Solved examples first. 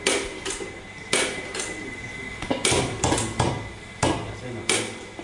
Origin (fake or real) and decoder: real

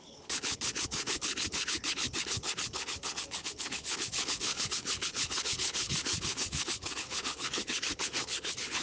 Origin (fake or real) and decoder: fake, codec, HILCodec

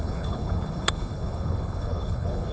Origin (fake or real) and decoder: fake, codec, HILCodec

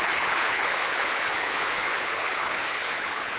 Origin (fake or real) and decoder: fake, codec, HILCodec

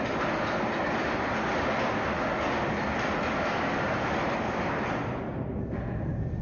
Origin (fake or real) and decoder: real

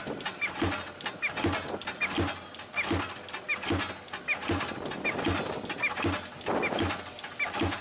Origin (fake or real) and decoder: real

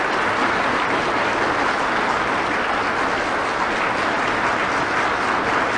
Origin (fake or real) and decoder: real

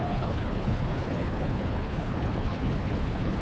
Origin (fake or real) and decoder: fake, codec, HILCodec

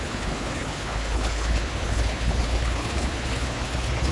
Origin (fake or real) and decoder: fake, codec, HILCodec